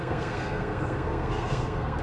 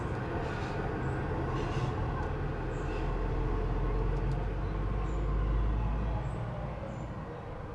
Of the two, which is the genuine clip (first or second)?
second